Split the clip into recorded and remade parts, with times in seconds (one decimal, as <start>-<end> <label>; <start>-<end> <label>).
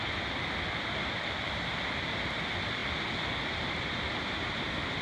0.0-5.0 recorded